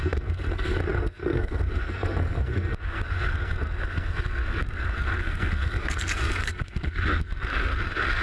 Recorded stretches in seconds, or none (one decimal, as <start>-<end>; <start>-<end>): none